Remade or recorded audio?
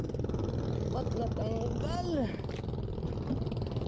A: recorded